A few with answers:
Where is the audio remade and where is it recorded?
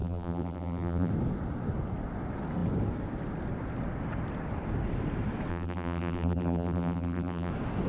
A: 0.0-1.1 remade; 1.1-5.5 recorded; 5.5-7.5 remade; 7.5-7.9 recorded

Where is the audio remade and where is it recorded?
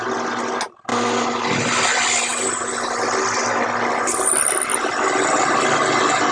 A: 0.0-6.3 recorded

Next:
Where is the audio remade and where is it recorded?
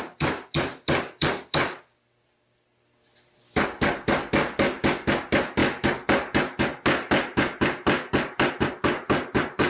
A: 0.0-9.7 recorded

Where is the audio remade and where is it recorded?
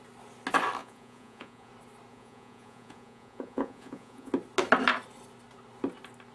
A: 0.0-0.8 recorded; 0.8-1.7 remade; 1.7-2.1 recorded; 2.1-4.3 remade; 4.3-6.3 recorded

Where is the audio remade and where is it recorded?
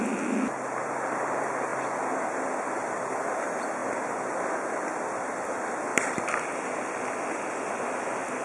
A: 0.0-5.9 recorded; 5.9-8.0 remade; 8.0-8.4 recorded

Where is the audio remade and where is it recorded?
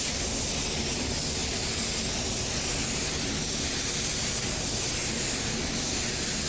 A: 0.0-6.5 recorded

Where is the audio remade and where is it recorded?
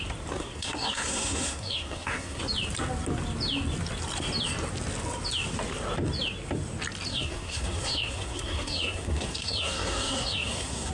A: 0.0-0.4 recorded; 0.4-2.4 remade; 2.4-7.1 recorded; 7.1-10.9 remade